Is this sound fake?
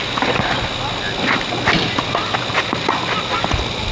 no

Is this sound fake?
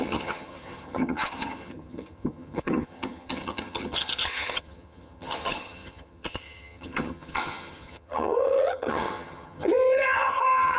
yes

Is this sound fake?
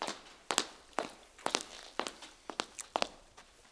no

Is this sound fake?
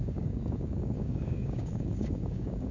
yes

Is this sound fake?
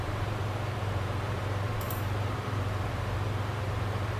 yes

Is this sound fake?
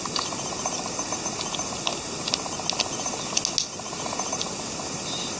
no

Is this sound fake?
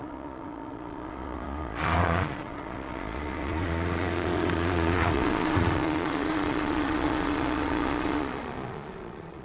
yes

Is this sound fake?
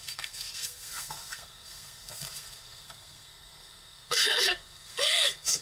yes